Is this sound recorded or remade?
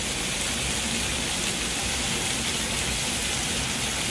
recorded